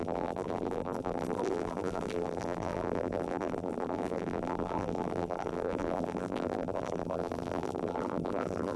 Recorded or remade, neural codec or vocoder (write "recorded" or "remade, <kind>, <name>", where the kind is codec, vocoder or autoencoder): remade, vocoder, BigVGAN v2